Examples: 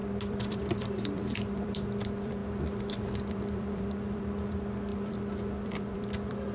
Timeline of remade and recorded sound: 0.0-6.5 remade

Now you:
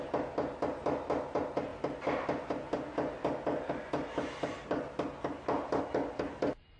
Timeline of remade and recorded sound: 0.0-6.8 recorded

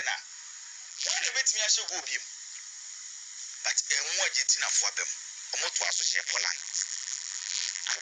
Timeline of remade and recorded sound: 0.0-0.9 recorded; 0.9-1.3 remade; 1.3-5.8 recorded; 5.8-8.0 remade

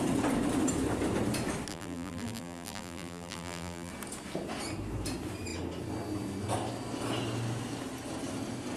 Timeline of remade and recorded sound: 0.0-1.7 recorded; 1.7-3.9 remade; 3.9-8.8 recorded